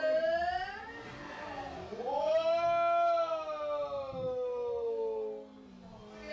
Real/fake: real